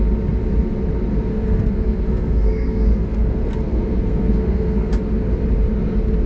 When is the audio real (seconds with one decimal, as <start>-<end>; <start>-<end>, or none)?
0.0-1.1; 4.9-6.3